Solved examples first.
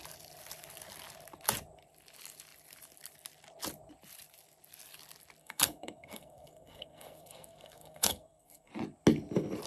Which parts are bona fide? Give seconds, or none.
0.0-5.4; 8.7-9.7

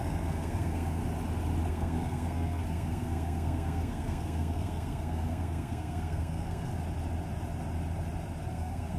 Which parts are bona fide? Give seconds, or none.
1.0-1.7; 6.7-8.5

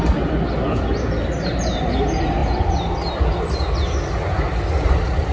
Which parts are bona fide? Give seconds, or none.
0.0-5.3